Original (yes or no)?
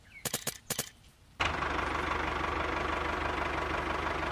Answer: yes